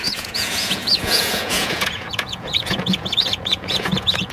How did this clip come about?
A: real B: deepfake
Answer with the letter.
B